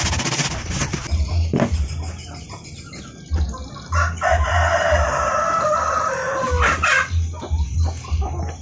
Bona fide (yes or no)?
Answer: yes